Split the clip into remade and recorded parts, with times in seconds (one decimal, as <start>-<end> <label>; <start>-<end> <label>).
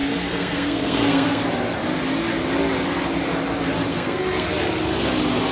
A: 0.0-1.4 remade; 1.4-3.9 recorded; 3.9-4.5 remade; 4.5-5.5 recorded